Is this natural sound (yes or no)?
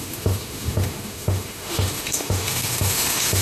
no